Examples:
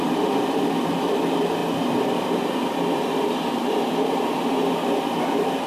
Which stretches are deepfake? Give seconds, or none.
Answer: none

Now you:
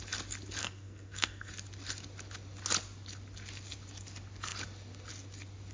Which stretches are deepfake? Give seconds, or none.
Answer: 0.6-1.5 (codec, SNAC)

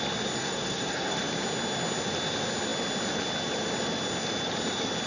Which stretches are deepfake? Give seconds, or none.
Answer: 0.4-1.2 (codec, SNAC)

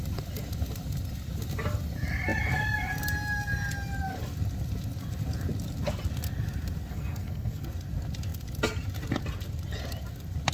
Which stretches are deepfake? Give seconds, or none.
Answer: 6.9-7.6 (codec, SNAC)

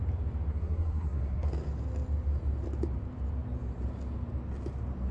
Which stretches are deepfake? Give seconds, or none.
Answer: 0.5-1.5 (codec, SNAC)